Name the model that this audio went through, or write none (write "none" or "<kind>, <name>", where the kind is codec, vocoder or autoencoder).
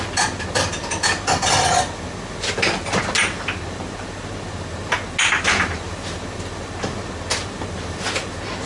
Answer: none